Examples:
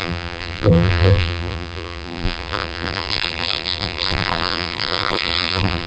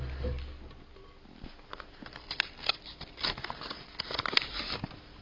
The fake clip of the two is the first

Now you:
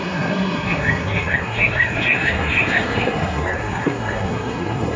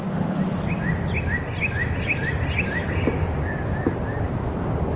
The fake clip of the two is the first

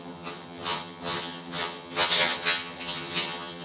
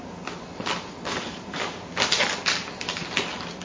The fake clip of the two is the first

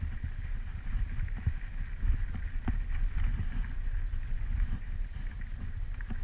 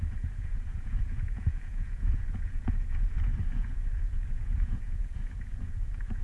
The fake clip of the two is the second